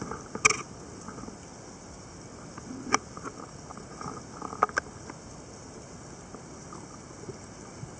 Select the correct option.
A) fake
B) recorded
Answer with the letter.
B